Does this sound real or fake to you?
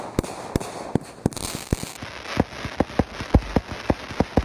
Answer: real